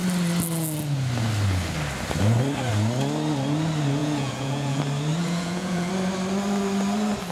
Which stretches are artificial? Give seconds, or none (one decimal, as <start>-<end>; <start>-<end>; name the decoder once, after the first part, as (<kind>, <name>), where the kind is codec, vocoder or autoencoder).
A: 4.0-4.8 (vocoder, Vocos); 5.2-5.9